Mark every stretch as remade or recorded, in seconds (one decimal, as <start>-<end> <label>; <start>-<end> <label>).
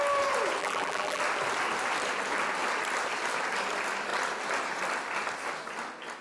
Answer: 0.0-0.6 recorded; 0.6-1.2 remade; 1.2-6.2 recorded